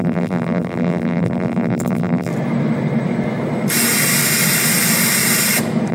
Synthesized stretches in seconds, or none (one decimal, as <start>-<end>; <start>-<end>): 0.0-2.3